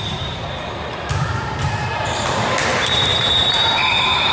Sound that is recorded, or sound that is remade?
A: remade